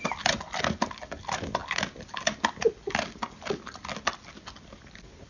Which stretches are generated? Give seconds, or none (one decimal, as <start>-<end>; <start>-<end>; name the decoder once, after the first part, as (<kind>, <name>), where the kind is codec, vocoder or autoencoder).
none